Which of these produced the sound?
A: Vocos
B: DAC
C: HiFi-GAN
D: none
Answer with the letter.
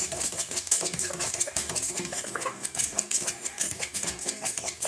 B